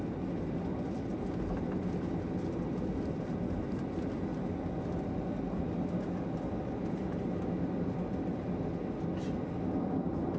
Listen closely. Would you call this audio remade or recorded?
recorded